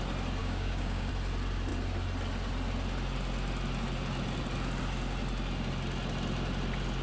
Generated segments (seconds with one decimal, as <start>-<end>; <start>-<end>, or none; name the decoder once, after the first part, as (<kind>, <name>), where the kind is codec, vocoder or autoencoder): 0.4-1.1 (codec, DAC)